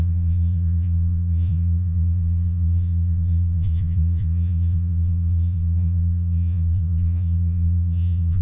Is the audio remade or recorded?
remade